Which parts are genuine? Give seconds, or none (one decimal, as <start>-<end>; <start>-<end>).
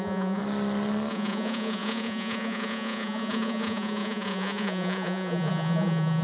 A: 0.4-1.1